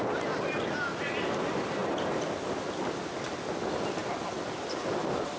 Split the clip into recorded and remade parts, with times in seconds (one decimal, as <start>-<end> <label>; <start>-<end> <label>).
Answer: 0.0-5.4 recorded